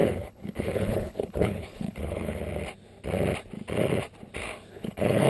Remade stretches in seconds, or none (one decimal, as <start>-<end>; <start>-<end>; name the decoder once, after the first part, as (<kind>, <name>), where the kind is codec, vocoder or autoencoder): 0.0-2.4 (codec, HILCodec); 4.7-5.3